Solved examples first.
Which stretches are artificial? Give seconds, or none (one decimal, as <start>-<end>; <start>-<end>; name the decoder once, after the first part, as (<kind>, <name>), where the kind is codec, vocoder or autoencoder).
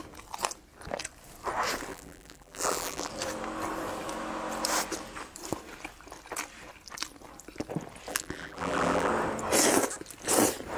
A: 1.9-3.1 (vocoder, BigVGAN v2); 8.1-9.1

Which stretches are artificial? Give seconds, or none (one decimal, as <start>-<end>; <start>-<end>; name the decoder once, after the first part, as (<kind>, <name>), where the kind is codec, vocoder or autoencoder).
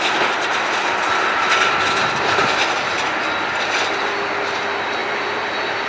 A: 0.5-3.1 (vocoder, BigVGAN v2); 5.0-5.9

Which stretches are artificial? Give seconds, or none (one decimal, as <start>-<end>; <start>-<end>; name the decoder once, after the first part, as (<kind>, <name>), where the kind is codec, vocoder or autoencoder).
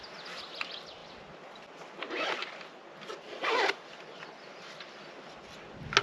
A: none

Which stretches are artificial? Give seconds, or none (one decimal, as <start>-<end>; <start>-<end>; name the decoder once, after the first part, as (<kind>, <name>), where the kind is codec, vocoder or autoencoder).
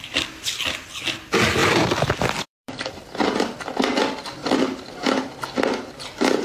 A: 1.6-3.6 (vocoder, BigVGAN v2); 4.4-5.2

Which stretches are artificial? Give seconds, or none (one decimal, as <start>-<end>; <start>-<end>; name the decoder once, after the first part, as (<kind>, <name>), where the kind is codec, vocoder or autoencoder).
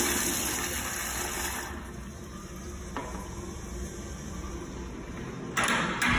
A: none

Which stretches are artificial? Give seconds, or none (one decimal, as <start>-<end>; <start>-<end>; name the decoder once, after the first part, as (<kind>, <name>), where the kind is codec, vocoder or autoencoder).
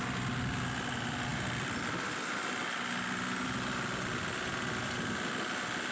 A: none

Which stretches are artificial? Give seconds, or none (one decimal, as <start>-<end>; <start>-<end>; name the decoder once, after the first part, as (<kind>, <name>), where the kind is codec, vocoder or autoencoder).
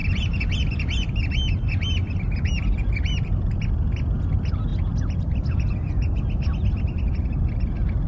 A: none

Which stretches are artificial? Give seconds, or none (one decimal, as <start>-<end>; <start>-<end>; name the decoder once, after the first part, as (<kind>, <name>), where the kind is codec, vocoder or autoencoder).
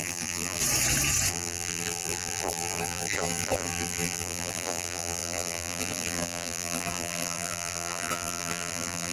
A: 0.0-0.6 (vocoder, BigVGAN v2); 1.3-9.1